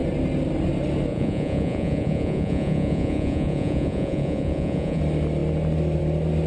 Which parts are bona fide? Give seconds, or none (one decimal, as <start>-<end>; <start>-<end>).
0.0-1.1; 5.0-6.5